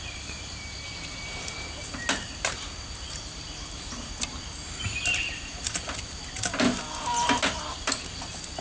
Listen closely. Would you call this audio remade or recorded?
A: recorded